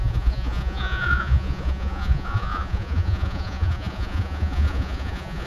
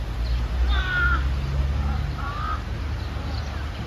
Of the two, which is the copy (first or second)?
first